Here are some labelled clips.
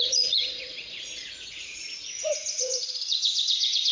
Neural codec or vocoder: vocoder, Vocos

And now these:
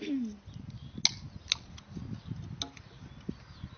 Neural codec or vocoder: none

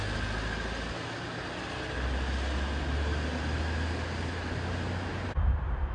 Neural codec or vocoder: none